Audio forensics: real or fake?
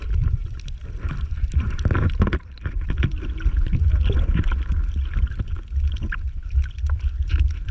real